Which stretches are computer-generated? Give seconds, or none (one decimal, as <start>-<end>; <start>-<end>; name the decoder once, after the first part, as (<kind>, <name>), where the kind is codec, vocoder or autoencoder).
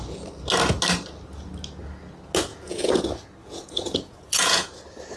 2.5-3.0 (vocoder, Vocos); 3.4-4.8